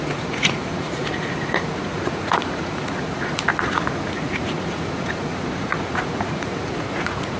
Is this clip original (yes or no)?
no